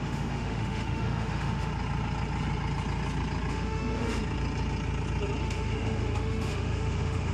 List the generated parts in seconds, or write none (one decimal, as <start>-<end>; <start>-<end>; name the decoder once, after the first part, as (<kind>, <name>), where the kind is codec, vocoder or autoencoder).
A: 0.0-1.7 (autoencoder, DAC-VAE); 3.5-4.2; 5.4-7.3

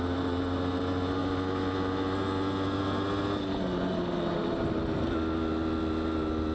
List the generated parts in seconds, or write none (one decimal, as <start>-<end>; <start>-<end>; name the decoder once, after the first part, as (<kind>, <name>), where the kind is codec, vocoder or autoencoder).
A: none

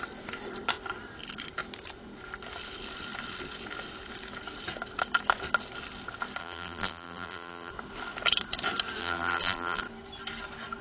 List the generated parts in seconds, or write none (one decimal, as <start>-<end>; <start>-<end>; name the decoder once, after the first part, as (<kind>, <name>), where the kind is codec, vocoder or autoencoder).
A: 6.4-7.7 (vocoder, BigVGAN v2); 9.0-9.8

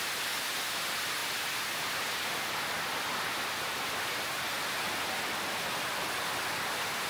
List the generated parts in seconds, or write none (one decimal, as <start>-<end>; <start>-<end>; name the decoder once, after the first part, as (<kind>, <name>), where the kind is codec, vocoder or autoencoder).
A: none

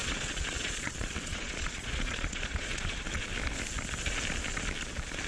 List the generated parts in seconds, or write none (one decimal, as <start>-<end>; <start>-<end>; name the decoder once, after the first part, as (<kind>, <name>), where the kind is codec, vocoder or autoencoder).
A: 0.0-3.2 (vocoder, Vocos)

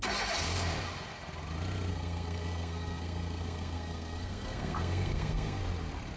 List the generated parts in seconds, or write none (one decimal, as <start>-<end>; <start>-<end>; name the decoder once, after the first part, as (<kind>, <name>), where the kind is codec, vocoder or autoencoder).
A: 1.9-5.6 (codec, SNAC)

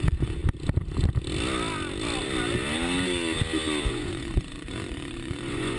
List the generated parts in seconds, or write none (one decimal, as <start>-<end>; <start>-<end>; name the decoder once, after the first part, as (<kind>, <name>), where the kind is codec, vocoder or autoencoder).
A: 0.0-0.4 (vocoder, Vocos); 3.9-5.8